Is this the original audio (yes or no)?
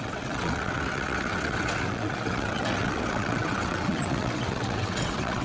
no